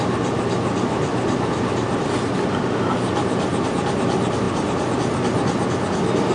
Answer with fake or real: real